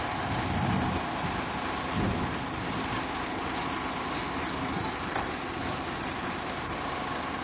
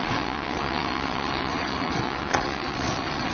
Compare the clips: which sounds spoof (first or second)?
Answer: second